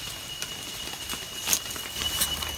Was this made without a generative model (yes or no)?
yes